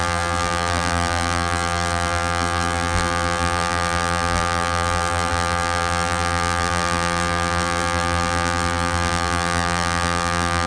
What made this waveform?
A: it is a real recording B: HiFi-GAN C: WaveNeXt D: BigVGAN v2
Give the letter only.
D